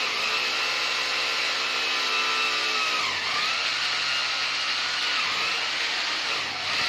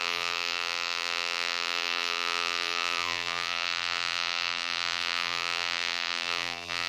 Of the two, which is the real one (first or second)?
first